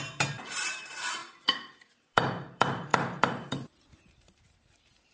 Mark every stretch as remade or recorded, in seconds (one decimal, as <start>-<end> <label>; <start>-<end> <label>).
0.0-1.2 remade; 1.2-1.9 recorded; 1.9-5.1 remade